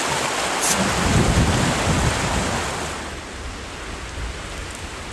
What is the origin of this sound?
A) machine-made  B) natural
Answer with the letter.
B